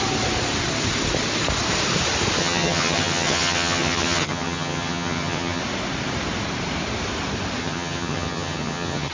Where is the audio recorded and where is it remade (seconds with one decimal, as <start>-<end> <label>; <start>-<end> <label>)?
0.0-2.4 recorded; 2.4-5.6 remade; 5.6-7.6 recorded; 7.6-9.1 remade